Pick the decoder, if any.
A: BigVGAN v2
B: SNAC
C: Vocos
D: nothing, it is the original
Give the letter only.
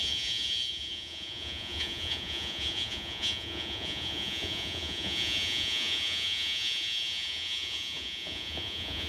C